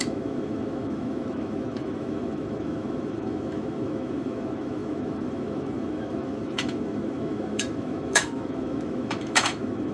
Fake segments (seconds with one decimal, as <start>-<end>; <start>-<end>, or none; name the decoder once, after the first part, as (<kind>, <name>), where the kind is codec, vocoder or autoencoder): 0.0-9.9 (autoencoder, DAC-VAE)